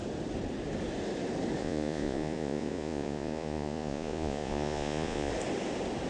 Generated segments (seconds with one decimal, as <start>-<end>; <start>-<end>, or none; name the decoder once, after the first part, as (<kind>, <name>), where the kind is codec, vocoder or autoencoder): 1.6-5.3 (vocoder, Vocos)